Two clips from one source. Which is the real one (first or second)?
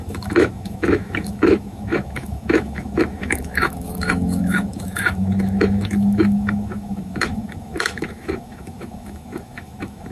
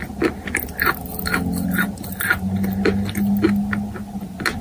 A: second